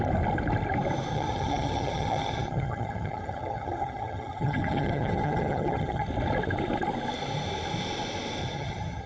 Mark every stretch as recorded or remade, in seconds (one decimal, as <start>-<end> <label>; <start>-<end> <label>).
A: 0.0-1.1 recorded; 1.1-6.1 remade; 6.1-8.4 recorded; 8.4-9.1 remade